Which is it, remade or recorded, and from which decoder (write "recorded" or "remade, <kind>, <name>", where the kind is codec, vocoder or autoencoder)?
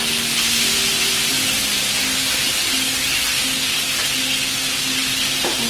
recorded